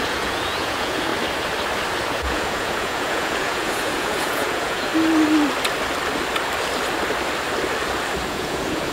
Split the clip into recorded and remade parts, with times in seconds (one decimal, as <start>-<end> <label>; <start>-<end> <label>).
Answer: 0.0-1.1 remade; 1.1-2.0 recorded; 2.0-4.9 remade; 4.9-8.3 recorded; 8.3-8.9 remade